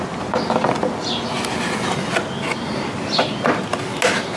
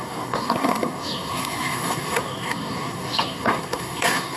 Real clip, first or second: first